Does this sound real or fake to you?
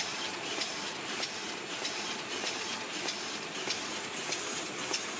fake